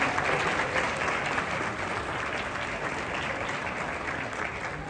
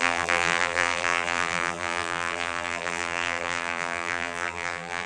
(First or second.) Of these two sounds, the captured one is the first